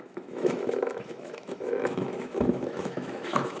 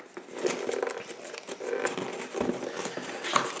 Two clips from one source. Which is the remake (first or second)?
first